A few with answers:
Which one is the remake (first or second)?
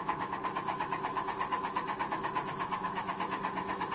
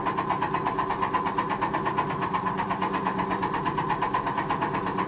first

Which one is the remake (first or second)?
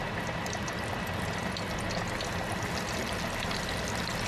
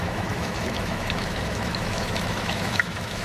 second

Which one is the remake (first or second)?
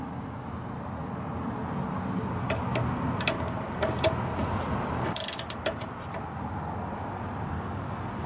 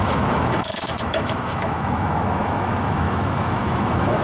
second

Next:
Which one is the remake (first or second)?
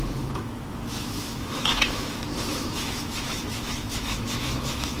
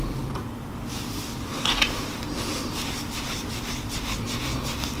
first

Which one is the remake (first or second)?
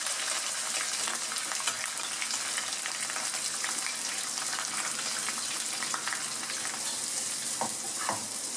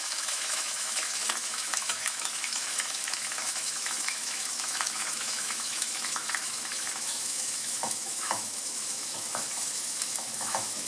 second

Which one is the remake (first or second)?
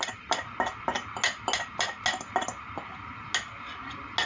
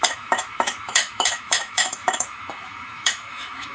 second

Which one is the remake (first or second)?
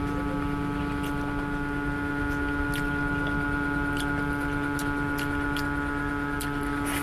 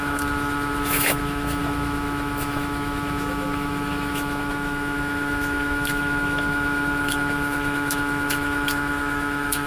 second